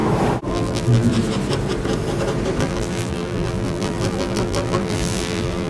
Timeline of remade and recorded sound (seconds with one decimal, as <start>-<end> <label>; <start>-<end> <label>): 0.0-0.5 recorded; 0.5-1.1 remade; 1.1-2.6 recorded; 2.6-5.7 remade